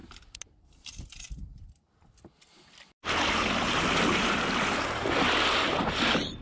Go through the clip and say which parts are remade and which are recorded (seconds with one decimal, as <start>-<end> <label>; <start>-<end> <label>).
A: 0.0-6.4 recorded